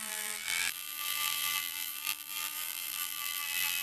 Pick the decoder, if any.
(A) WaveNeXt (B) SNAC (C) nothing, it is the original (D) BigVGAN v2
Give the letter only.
D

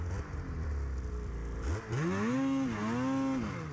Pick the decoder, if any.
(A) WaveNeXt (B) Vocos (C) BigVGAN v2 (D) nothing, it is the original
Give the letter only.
D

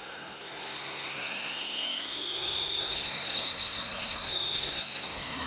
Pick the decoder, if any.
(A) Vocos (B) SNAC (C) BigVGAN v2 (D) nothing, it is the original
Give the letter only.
B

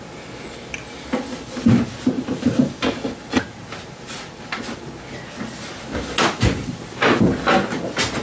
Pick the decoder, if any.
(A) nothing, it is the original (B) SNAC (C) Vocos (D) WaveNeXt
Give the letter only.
A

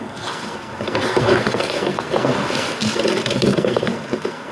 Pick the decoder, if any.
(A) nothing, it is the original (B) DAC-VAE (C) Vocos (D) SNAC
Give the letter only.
D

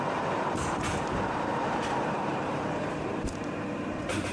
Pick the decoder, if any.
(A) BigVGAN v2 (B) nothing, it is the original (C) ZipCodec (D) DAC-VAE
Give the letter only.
A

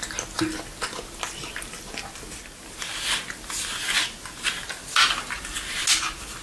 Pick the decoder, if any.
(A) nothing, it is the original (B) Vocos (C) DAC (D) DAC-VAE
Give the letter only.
A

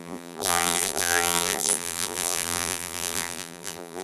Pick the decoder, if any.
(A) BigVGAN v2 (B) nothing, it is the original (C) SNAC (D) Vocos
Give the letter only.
A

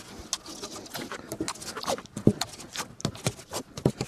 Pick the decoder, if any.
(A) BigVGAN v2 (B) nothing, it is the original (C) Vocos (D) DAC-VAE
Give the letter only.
B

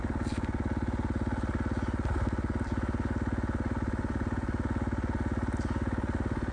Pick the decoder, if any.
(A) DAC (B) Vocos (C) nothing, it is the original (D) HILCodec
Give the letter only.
C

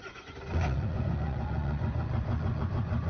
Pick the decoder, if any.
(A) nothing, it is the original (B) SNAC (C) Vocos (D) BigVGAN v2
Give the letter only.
C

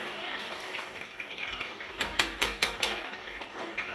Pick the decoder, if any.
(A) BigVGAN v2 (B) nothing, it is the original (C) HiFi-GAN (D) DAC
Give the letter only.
D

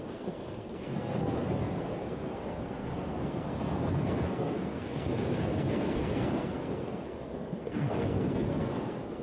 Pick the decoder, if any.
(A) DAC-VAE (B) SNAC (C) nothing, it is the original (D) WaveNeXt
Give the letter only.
B